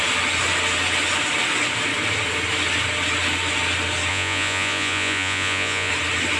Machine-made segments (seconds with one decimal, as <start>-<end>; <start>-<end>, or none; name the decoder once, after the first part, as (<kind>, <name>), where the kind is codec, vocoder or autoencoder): 4.1-5.9 (vocoder, Vocos)